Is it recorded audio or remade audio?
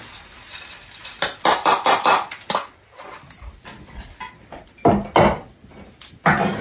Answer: recorded